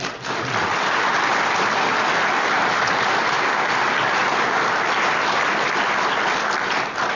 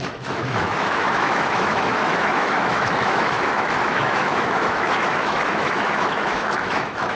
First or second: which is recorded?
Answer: first